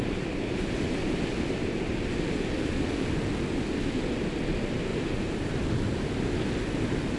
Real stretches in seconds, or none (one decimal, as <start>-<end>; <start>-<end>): 0.0-4.9; 5.5-7.2